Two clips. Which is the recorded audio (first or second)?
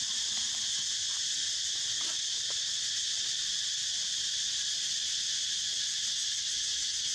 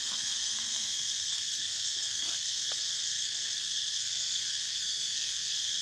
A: first